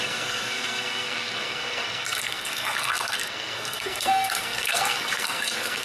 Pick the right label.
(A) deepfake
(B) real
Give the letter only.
A